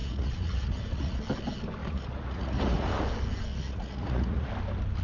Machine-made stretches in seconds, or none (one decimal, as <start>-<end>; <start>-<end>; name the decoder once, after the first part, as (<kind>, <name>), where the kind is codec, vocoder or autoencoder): 0.0-1.2 (vocoder, Vocos); 1.8-2.9; 3.5-4.5